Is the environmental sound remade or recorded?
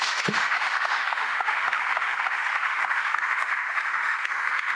remade